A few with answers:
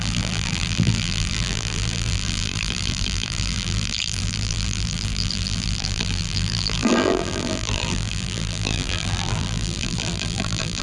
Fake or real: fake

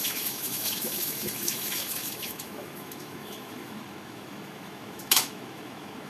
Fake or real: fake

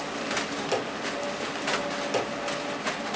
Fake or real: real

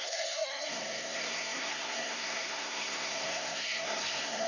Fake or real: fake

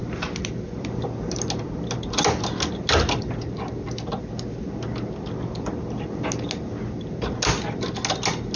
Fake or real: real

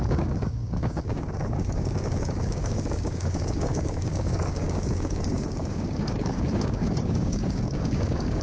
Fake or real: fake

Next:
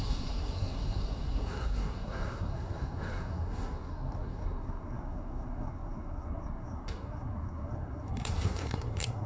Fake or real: fake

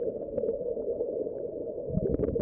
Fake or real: fake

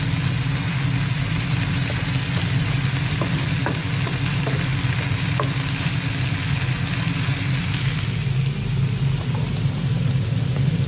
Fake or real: real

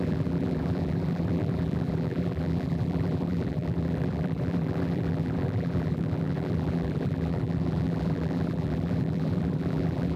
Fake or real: fake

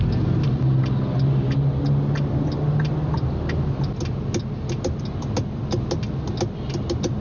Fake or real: real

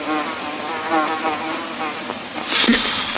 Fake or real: real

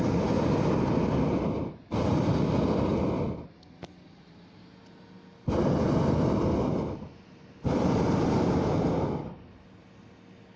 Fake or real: real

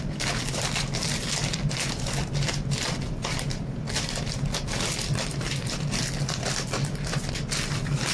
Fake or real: real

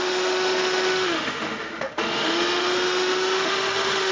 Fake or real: fake